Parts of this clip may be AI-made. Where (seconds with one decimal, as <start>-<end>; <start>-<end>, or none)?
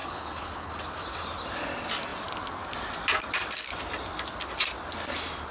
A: 0.0-0.7